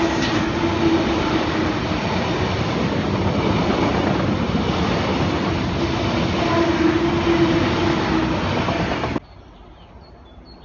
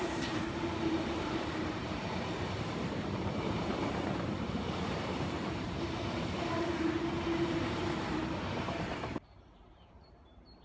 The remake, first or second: second